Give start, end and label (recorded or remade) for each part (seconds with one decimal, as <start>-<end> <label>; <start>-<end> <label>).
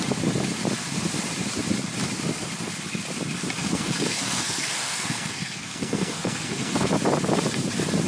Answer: 0.0-3.6 recorded; 3.6-6.9 remade; 6.9-8.1 recorded